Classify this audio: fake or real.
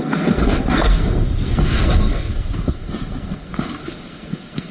fake